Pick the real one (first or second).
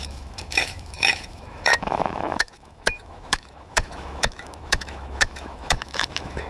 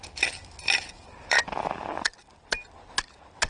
second